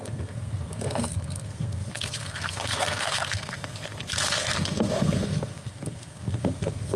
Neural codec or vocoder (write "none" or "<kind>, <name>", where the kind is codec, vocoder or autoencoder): codec, SNAC